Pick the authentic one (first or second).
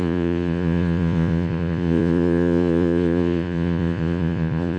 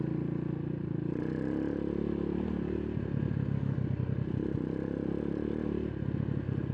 second